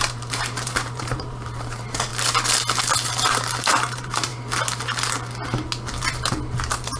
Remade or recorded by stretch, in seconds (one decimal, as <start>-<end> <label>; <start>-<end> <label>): 0.0-2.1 remade; 2.1-3.3 recorded; 3.3-4.3 remade; 4.3-6.3 recorded; 6.3-7.0 remade